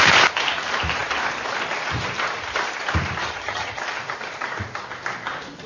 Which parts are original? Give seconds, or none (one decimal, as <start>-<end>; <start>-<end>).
0.0-3.2; 3.8-5.7